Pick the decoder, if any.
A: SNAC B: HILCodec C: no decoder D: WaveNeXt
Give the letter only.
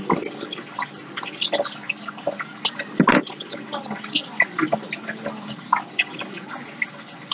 C